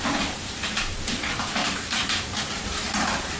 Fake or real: fake